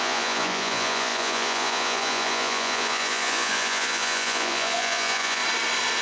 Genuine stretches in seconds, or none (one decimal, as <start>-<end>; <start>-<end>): 5.4-6.0